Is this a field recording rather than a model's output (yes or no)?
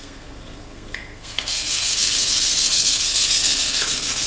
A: no